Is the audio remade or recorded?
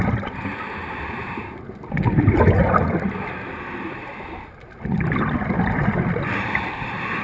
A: remade